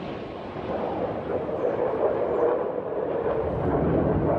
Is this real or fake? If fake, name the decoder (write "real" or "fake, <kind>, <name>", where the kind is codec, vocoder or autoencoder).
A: real